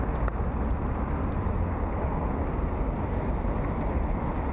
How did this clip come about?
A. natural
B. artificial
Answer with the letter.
A